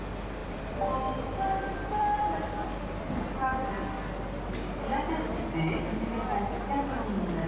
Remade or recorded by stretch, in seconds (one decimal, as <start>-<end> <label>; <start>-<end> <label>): 0.0-0.4 recorded; 0.4-3.7 remade; 3.7-7.5 recorded